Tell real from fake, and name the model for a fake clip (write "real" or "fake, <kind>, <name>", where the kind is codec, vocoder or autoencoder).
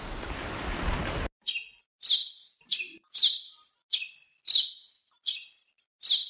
real